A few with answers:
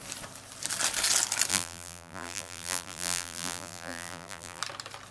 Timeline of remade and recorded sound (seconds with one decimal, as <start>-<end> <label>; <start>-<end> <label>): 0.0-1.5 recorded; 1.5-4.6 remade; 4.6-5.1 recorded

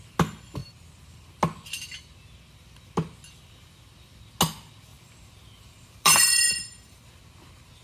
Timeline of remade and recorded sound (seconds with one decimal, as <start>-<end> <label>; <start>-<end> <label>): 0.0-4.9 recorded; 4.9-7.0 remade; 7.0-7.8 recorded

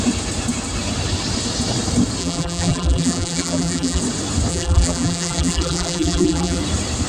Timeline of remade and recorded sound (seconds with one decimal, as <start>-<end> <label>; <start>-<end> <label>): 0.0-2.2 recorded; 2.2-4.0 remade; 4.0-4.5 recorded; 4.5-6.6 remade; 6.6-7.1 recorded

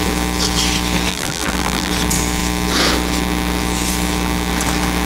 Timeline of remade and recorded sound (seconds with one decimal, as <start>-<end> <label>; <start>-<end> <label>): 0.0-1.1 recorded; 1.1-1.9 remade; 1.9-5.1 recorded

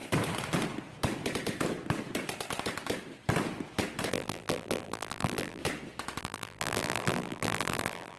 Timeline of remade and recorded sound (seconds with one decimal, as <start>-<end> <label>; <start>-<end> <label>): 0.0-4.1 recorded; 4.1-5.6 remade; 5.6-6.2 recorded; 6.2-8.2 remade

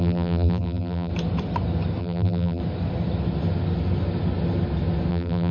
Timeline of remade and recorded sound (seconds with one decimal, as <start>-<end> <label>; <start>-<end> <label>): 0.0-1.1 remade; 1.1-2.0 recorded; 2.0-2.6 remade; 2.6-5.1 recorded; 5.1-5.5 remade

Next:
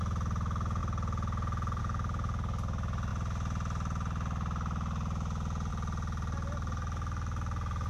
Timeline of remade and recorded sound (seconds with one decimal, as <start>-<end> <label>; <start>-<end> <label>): 0.0-7.9 recorded

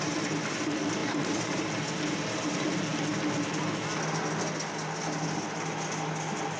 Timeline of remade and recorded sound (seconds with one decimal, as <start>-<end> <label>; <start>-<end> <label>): 0.0-1.0 recorded; 1.0-1.6 remade; 1.6-6.6 recorded